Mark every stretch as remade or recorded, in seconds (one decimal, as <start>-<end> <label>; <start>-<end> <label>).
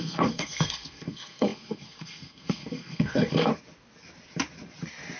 0.0-3.5 remade; 3.5-5.2 recorded